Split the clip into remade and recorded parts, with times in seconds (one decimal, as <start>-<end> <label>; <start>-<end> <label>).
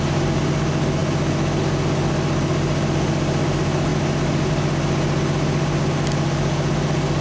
0.0-7.2 recorded